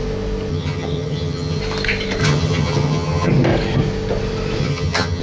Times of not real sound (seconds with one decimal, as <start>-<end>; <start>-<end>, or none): 0.5-1.6; 2.2-3.3; 4.6-5.2